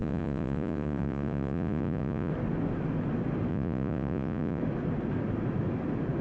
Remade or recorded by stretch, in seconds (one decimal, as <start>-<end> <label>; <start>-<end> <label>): 0.0-2.3 remade; 2.3-3.5 recorded; 3.5-4.6 remade; 4.6-6.2 recorded